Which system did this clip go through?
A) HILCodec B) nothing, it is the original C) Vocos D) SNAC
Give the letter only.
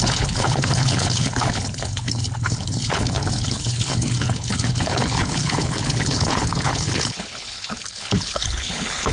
A